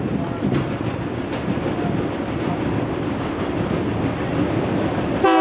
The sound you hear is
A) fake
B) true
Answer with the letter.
B